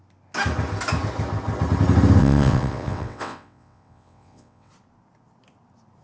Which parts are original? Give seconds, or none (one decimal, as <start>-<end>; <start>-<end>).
0.0-2.2; 4.7-6.0